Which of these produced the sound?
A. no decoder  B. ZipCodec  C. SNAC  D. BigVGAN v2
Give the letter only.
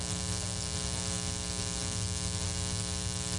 A